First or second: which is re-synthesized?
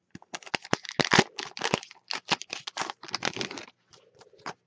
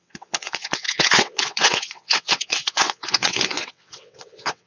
second